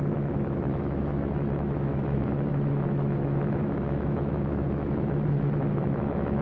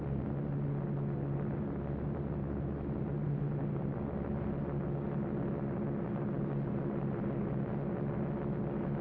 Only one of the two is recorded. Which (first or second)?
second